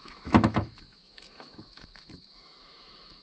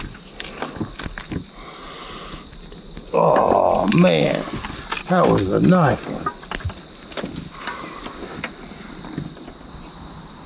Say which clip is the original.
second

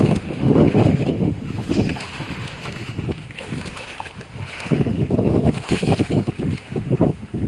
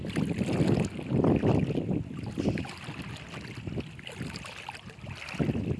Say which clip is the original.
second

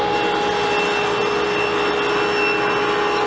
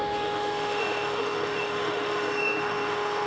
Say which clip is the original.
first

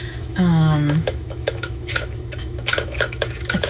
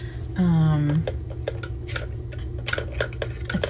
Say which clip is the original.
second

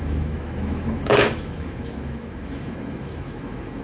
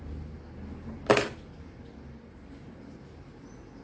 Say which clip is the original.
second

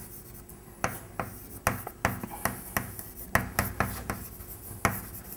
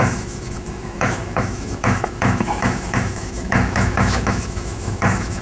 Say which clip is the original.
first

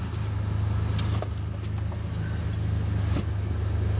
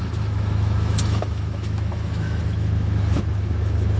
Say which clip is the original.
first